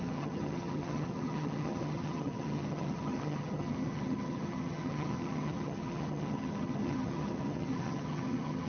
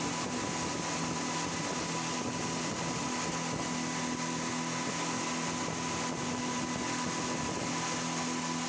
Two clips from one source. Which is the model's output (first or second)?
first